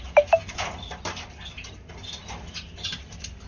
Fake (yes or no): no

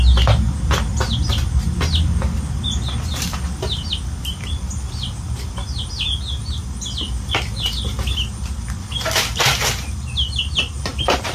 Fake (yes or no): no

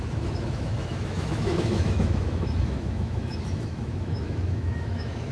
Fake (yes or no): yes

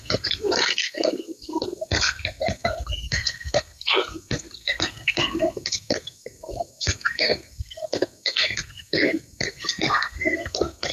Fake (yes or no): yes